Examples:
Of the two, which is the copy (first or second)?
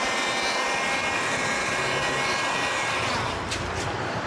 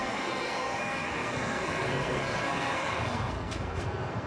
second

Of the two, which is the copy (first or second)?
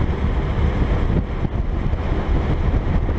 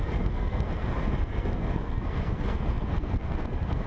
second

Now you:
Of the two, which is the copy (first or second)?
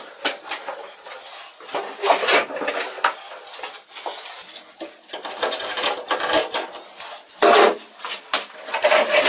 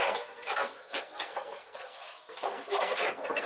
second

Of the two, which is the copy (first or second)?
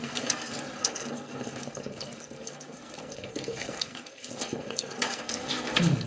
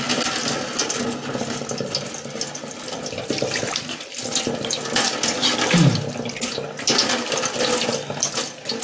first